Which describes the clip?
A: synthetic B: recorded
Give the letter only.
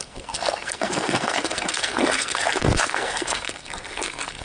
A